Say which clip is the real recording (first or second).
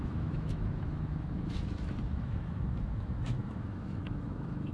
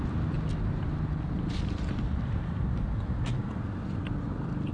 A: second